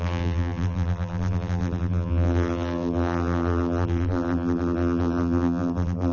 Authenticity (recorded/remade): remade